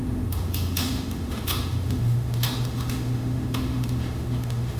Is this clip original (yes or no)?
no